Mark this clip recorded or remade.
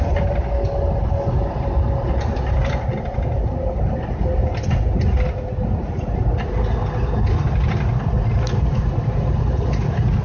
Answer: recorded